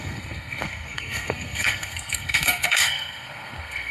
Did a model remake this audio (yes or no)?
yes